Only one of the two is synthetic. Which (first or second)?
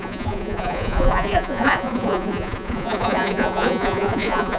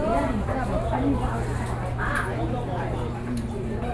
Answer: first